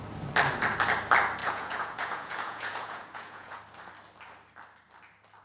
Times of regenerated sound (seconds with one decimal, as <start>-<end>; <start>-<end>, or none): 1.4-3.6